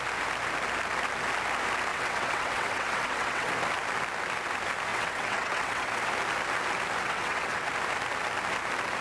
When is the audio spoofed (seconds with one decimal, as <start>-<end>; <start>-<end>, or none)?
1.9-3.5; 4.9-6.1; 7.0-7.7